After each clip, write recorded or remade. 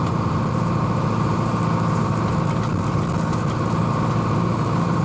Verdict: recorded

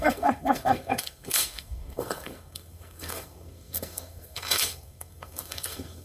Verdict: remade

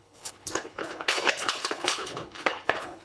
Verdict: remade